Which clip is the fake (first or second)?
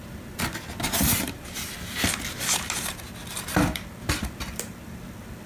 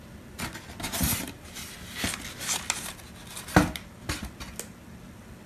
first